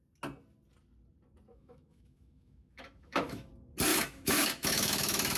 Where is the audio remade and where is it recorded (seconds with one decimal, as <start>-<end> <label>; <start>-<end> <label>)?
0.0-1.5 recorded; 1.5-3.5 remade; 3.5-3.9 recorded; 3.9-5.4 remade